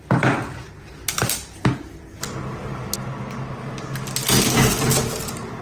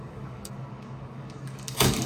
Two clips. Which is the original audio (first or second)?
first